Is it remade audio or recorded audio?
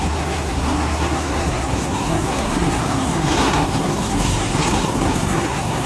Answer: remade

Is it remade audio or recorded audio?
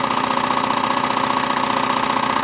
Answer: recorded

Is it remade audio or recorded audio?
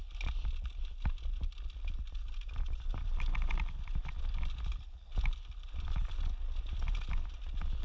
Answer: recorded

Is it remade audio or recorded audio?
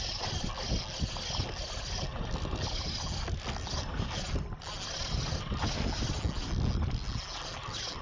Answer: recorded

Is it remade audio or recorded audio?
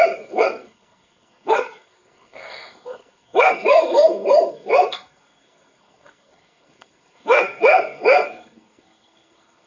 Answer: remade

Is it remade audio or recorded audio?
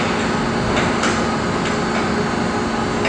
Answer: recorded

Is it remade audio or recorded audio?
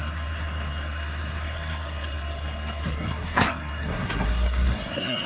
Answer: remade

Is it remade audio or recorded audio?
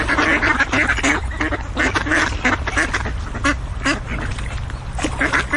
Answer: recorded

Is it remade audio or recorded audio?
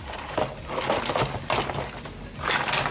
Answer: recorded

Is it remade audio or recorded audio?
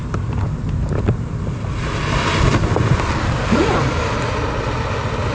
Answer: recorded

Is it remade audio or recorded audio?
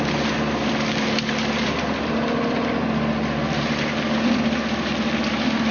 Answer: recorded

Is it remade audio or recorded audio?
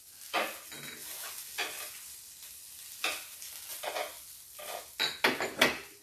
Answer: recorded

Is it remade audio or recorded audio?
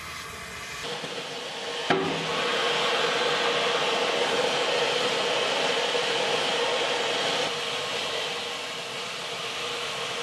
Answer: recorded